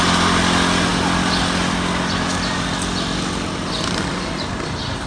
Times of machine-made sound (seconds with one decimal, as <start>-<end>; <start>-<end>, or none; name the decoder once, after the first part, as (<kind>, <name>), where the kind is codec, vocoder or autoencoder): none